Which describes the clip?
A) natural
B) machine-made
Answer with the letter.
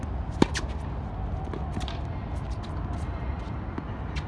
A